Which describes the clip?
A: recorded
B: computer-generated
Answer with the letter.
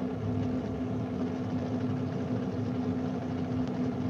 A